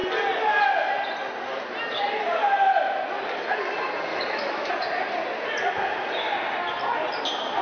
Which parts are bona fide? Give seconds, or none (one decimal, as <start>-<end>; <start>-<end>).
0.0-4.1; 4.7-7.6